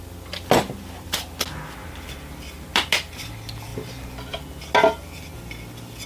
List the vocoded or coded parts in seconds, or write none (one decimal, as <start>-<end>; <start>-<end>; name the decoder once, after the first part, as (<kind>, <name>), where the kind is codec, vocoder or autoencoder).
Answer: none